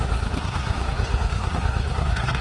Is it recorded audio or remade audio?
remade